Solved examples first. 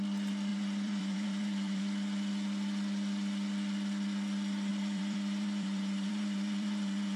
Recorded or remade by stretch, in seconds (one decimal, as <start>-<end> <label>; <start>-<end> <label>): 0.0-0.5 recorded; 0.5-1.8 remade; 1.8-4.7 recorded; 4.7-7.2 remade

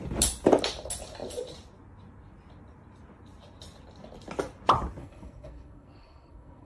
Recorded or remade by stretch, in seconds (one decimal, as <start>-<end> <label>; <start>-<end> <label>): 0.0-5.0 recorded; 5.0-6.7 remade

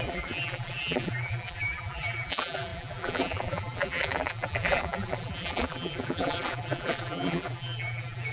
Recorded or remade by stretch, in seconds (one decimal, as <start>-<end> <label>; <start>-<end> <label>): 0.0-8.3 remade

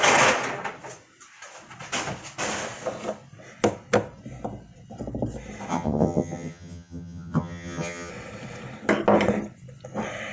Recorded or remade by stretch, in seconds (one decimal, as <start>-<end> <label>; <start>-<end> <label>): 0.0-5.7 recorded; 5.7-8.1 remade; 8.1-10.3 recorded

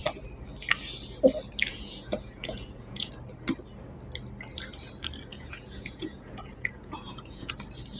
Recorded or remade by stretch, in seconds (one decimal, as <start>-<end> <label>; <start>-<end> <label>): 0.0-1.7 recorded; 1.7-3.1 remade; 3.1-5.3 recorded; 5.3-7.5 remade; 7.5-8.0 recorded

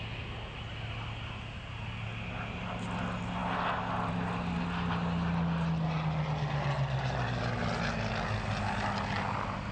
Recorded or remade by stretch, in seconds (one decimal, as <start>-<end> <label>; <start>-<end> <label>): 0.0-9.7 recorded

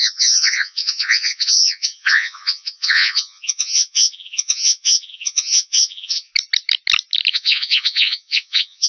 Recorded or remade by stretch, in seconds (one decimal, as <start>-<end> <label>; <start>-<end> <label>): 0.0-6.3 remade; 6.3-7.3 recorded; 7.3-8.9 remade